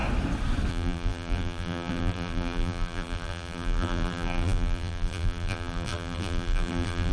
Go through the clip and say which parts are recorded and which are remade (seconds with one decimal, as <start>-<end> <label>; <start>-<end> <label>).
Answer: 0.0-0.7 recorded; 0.7-7.1 remade

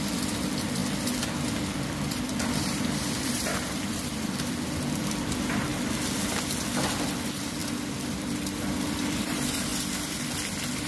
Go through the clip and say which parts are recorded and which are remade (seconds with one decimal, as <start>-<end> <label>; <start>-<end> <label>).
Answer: 0.0-5.7 remade; 5.7-6.6 recorded; 6.6-9.7 remade; 9.7-10.9 recorded